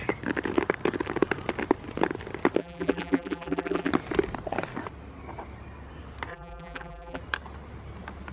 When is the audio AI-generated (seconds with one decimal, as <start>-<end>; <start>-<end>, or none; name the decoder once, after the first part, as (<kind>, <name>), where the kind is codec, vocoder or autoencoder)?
2.6-3.9 (vocoder, BigVGAN v2); 6.3-7.2